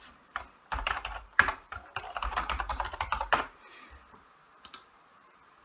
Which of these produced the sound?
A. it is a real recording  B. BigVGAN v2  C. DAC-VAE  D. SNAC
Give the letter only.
B